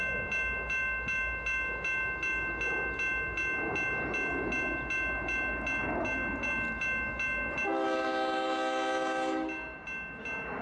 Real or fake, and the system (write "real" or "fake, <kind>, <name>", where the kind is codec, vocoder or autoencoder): real